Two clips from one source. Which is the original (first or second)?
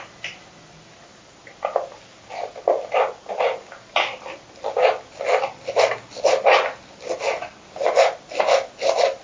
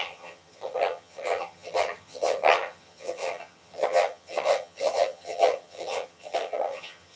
first